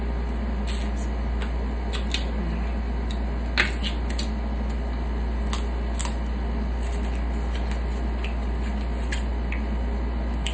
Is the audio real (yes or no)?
yes